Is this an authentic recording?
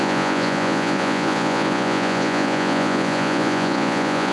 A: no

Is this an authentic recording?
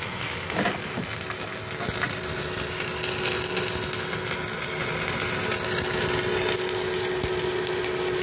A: yes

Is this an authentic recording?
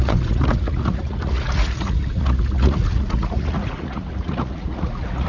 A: no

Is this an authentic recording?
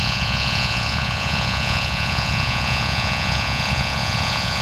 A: no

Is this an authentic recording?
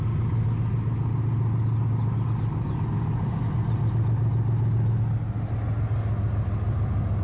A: yes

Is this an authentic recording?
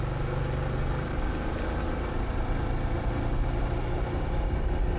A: yes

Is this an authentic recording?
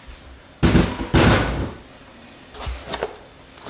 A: yes